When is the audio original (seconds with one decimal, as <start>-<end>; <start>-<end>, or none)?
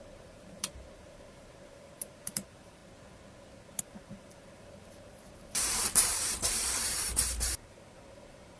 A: 2.8-3.8